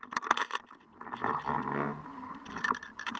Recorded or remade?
recorded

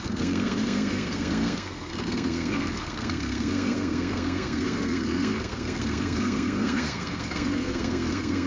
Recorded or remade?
remade